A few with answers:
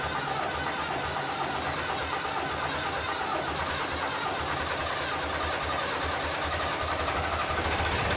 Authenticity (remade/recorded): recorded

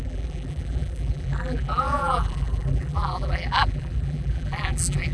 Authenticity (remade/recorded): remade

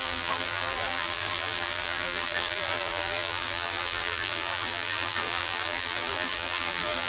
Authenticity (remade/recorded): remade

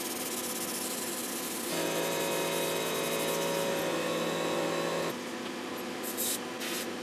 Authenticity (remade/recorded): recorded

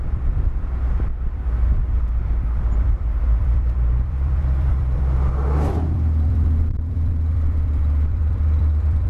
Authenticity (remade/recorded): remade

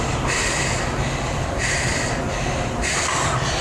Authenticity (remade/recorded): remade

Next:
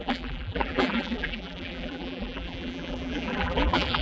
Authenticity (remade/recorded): remade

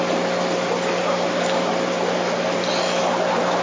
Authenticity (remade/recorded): recorded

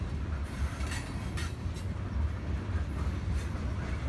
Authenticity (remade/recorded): recorded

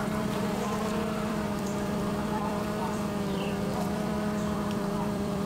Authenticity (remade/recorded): remade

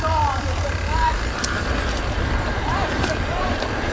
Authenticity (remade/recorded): remade